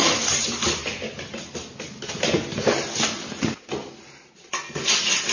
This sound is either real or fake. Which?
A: real